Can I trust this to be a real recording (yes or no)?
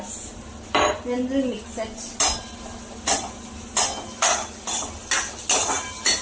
yes